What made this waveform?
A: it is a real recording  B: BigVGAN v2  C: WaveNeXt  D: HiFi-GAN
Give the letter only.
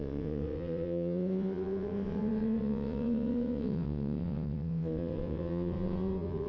C